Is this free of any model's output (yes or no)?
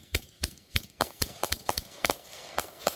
no